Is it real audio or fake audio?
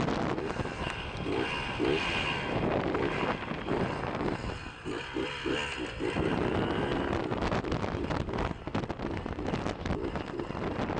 real